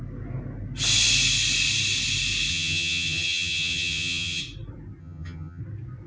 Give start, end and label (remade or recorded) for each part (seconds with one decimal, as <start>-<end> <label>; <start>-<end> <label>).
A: 0.0-2.5 recorded; 2.5-4.4 remade; 4.4-5.0 recorded; 5.0-5.6 remade; 5.6-6.1 recorded